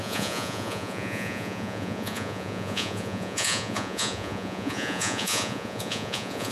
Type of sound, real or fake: fake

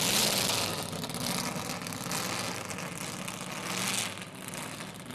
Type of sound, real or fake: real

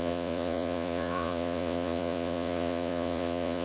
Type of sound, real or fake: fake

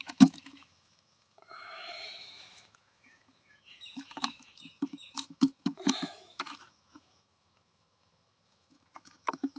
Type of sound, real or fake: fake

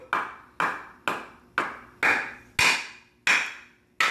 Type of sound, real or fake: real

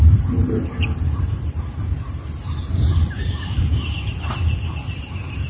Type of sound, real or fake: fake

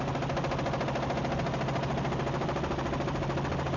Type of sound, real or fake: real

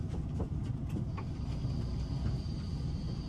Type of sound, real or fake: real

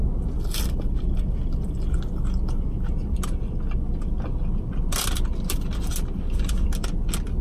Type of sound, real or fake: real